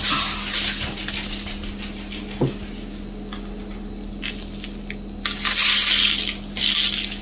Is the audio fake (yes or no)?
no